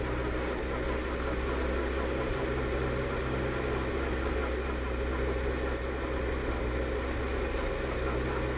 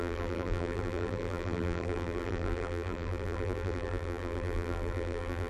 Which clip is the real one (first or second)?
first